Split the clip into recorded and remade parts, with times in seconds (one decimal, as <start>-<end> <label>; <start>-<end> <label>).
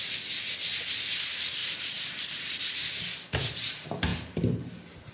0.0-1.6 recorded; 1.6-3.1 remade; 3.1-4.1 recorded; 4.1-5.1 remade